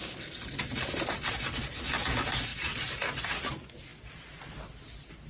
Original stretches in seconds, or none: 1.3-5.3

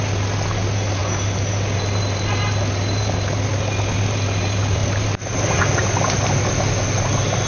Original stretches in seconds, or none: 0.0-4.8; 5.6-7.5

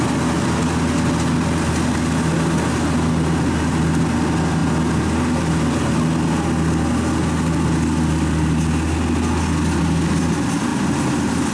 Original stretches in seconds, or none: 0.0-11.5